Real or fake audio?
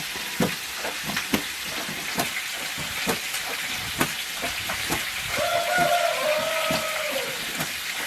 real